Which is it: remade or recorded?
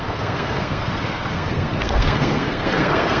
remade